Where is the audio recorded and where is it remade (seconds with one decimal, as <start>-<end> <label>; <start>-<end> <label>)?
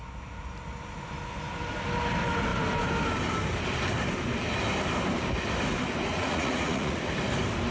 0.0-6.1 recorded; 6.1-7.0 remade; 7.0-7.7 recorded